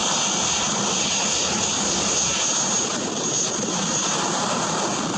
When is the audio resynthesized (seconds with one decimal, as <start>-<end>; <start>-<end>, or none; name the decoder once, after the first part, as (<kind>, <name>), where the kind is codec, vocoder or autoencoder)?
none